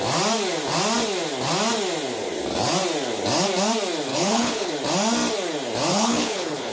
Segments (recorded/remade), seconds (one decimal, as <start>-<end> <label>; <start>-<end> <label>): 0.0-4.1 recorded; 4.1-4.7 remade; 4.7-5.9 recorded; 5.9-6.7 remade